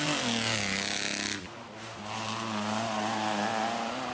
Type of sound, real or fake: real